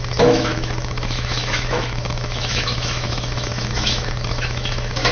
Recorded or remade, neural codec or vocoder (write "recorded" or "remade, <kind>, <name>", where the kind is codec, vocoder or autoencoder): remade, autoencoder, DAC-VAE